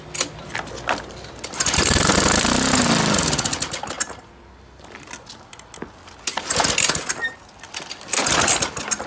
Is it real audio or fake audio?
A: real